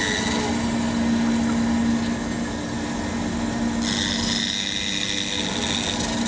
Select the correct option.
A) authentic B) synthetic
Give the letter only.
A